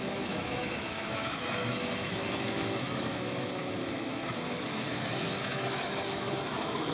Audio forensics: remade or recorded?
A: remade